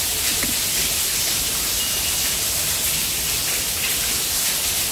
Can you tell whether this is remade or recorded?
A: recorded